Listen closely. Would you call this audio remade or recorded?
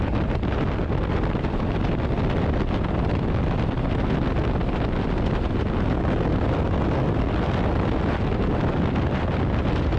recorded